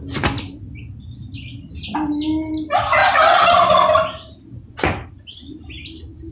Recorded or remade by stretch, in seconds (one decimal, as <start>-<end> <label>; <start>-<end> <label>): 0.0-6.3 recorded

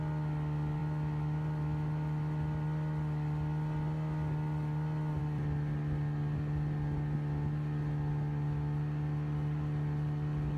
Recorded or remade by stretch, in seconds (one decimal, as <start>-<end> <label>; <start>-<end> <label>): 0.0-10.6 recorded

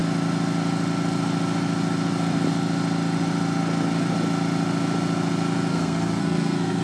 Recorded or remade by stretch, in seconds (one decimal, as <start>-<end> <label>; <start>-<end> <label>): 0.0-5.7 recorded; 5.7-6.8 remade